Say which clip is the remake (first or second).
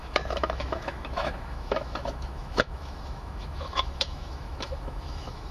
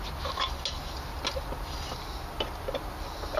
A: first